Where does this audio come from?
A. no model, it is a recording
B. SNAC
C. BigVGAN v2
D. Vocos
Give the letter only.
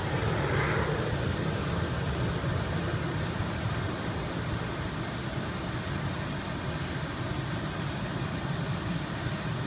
A